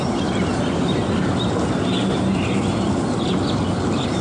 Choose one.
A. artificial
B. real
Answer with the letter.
B